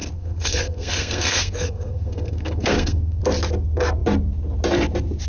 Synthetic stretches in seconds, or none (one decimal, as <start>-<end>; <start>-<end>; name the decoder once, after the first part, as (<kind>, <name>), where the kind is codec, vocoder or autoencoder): 0.0-3.2 (codec, SNAC)